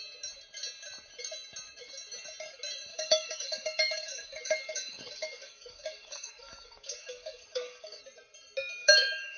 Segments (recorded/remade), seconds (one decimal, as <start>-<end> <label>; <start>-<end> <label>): 0.0-2.9 recorded; 2.9-8.0 remade; 8.0-8.8 recorded; 8.8-9.4 remade